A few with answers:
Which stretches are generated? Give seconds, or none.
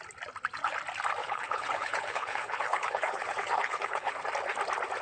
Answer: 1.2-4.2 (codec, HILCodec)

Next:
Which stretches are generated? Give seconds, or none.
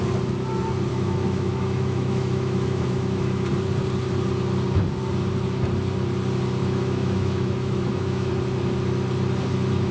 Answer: 0.9-3.5 (autoencoder, DAC-VAE); 6.6-8.3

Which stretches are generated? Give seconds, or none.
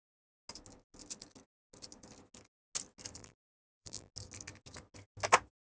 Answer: 3.2-4.1 (vocoder, BigVGAN v2)